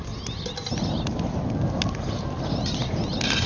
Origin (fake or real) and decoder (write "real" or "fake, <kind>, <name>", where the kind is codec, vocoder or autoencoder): real